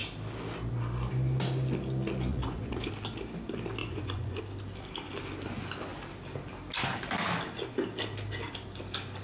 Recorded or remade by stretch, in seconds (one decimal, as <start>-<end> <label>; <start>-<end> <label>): 0.0-2.3 recorded; 2.3-2.9 remade; 2.9-3.8 recorded; 3.8-4.4 remade; 4.4-9.2 recorded